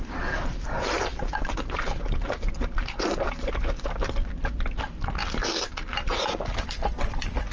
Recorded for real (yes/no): yes